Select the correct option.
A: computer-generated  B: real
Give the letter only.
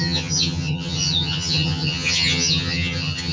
A